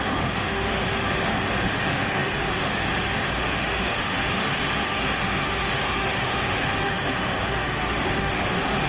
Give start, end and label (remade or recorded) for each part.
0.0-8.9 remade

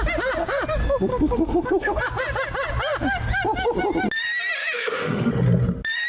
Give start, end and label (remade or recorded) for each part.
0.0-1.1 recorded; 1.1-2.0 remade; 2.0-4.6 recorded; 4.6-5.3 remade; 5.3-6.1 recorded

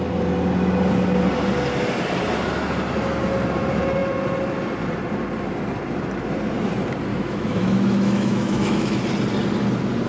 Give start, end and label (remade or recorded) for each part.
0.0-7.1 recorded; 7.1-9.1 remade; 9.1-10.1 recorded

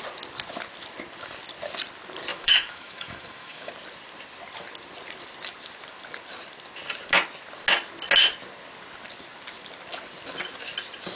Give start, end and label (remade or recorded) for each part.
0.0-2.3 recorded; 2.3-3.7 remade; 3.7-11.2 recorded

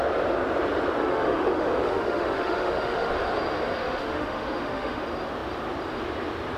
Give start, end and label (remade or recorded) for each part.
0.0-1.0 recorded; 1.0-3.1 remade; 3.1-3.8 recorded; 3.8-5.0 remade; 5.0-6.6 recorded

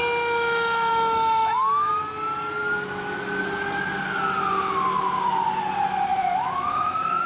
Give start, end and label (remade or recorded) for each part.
0.0-0.9 recorded; 0.9-1.9 remade; 1.9-6.1 recorded; 6.1-7.3 remade

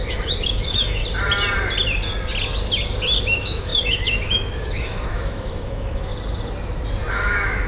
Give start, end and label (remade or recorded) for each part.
0.0-1.0 remade; 1.0-3.2 recorded; 3.2-6.1 remade; 6.1-7.1 recorded; 7.1-7.7 remade